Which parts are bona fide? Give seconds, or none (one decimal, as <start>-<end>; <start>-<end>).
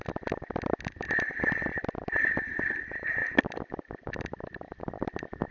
0.0-5.5